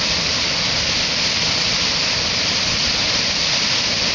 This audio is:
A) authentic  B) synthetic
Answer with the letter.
A